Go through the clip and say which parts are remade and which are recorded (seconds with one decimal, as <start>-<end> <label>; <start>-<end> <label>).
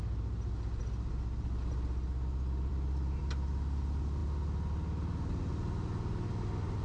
0.0-6.8 recorded